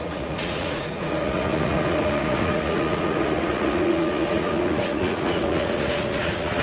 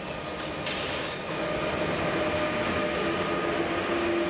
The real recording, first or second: second